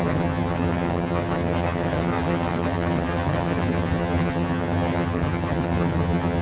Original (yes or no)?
no